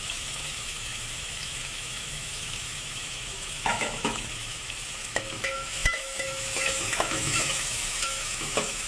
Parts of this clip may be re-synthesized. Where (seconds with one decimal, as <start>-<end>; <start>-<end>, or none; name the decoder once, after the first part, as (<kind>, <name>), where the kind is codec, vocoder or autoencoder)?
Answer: 0.0-8.9 (autoencoder, DAC-VAE)